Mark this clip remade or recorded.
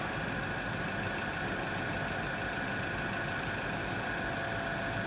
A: recorded